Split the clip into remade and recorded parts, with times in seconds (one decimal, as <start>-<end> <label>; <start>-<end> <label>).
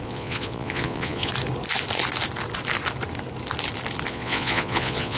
0.0-1.3 remade; 1.3-4.1 recorded; 4.1-5.2 remade